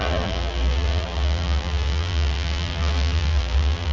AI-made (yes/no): yes